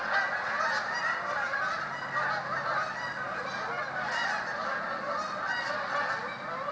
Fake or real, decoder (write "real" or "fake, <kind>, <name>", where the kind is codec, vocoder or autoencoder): real